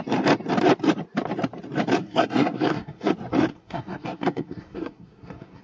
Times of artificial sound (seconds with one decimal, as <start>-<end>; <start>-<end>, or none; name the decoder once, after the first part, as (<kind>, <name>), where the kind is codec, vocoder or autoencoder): 2.0-3.1 (codec, SNAC); 3.5-5.6